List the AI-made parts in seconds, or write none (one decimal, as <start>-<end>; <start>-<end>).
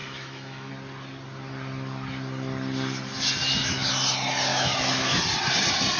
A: 0.0-0.7; 3.4-3.9; 4.5-5.2